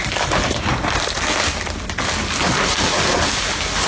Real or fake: real